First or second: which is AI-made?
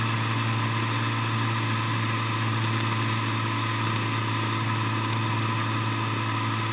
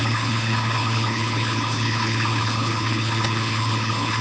second